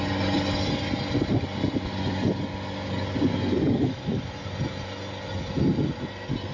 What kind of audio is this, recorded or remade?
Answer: recorded